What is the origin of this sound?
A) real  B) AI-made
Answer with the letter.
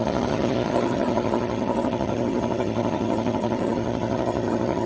B